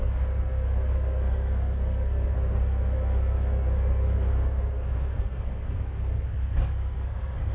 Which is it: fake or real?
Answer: fake